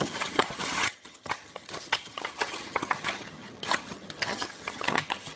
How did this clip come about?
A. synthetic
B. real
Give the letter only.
A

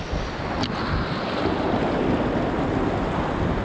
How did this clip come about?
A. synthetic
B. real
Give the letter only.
B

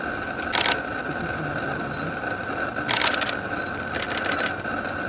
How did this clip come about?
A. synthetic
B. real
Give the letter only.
B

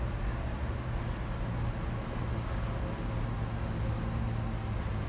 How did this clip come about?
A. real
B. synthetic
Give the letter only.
A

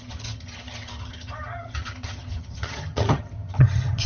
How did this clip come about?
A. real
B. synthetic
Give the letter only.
B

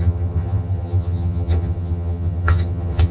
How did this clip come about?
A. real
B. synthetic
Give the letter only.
B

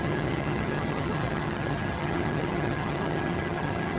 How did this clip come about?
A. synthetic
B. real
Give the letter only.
A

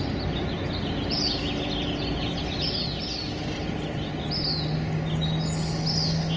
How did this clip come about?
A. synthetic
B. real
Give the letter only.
B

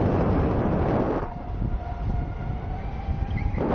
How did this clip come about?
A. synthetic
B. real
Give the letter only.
B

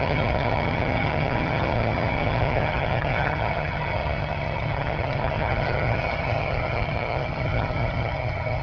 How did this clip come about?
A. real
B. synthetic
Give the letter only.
B